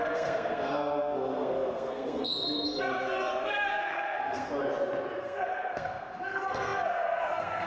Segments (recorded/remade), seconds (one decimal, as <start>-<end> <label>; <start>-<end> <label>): 0.0-4.5 remade; 4.5-5.2 recorded; 5.2-7.7 remade